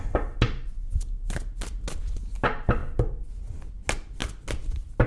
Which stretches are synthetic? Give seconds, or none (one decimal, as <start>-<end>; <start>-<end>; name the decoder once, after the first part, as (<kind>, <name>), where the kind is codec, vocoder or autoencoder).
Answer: none